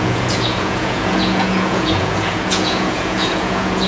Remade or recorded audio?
remade